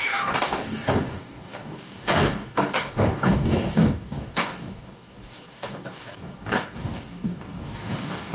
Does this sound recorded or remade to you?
remade